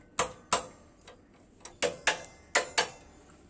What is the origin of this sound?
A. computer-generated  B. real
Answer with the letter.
B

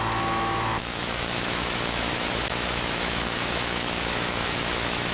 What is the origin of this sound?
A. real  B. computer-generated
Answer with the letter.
B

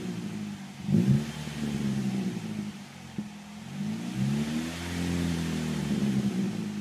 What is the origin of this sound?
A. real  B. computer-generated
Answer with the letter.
A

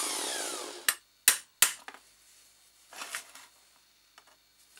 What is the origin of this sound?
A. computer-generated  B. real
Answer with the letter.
B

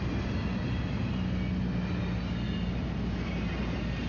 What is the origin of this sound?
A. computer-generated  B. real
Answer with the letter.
B